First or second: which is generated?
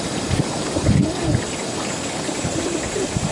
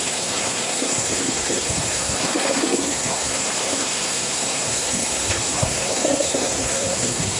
second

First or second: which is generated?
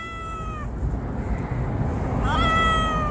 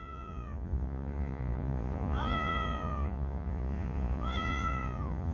second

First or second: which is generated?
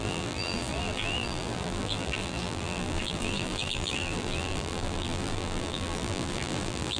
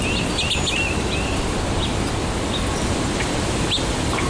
first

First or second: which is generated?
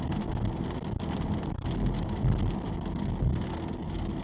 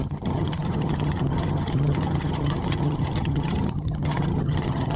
second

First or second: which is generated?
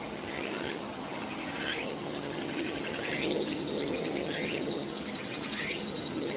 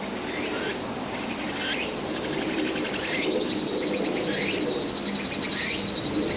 first